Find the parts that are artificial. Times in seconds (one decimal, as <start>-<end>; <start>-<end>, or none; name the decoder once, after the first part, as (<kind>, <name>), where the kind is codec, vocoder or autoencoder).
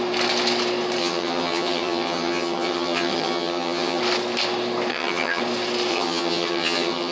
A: 1.0-4.0 (vocoder, HiFi-GAN); 4.9-5.4; 5.9-7.1